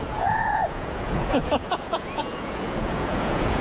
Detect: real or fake fake